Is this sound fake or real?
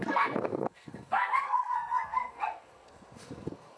fake